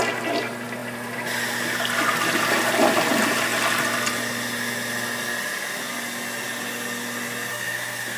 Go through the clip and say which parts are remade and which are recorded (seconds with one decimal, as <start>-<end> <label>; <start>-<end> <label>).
0.0-7.5 recorded; 7.5-8.2 remade